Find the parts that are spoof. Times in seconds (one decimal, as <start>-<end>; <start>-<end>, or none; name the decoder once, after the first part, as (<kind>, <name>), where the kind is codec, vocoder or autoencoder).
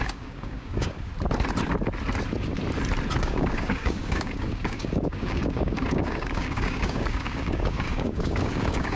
0.0-1.1 (codec, DAC); 3.2-9.0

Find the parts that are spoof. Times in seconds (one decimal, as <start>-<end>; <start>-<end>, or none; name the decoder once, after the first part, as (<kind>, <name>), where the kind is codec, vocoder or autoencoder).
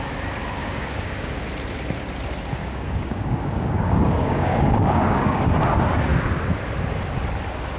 0.6-1.3 (codec, DAC); 2.6-5.5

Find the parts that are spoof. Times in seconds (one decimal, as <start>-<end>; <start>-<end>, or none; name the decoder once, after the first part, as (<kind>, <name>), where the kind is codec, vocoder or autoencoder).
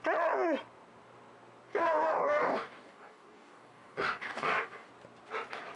1.7-4.9 (codec, DAC)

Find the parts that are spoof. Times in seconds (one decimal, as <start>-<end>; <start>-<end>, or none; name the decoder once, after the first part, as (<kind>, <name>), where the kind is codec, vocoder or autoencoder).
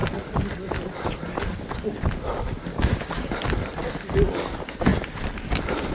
2.7-3.3 (codec, DAC)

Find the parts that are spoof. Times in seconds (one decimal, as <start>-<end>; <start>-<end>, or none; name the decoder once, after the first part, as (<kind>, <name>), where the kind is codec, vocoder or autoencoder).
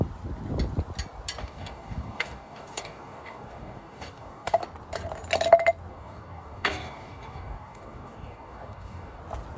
1.4-4.6 (codec, DAC); 5.9-9.2